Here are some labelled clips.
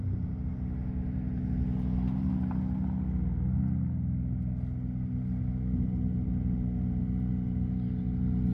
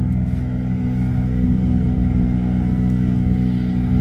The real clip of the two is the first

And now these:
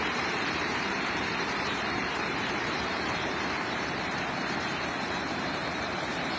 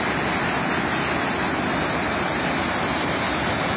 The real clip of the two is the second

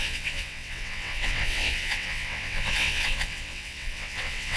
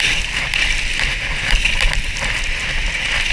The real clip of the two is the second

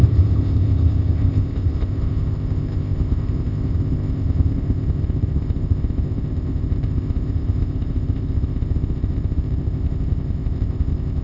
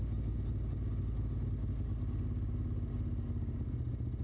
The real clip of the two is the second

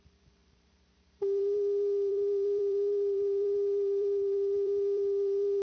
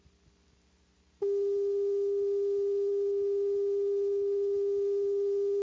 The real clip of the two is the second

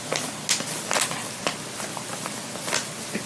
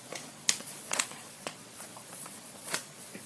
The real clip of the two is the first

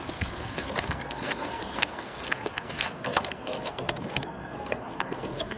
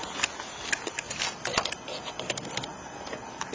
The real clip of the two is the second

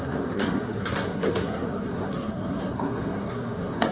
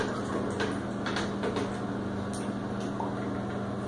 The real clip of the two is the second